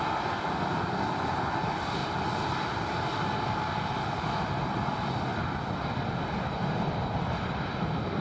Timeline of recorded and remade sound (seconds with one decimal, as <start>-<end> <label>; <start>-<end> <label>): 0.0-8.2 recorded